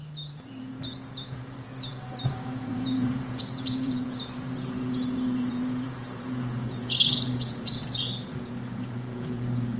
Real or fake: fake